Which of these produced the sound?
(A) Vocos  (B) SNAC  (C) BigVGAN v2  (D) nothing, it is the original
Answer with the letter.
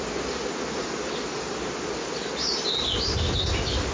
D